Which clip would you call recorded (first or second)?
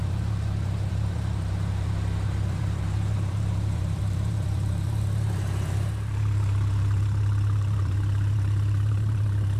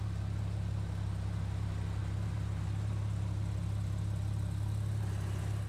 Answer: second